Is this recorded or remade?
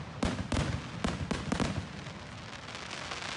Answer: recorded